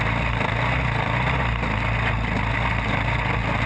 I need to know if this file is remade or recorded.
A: recorded